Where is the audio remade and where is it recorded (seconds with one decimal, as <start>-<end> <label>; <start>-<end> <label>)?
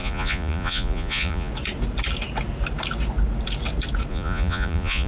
0.0-1.5 remade; 1.5-4.1 recorded; 4.1-5.1 remade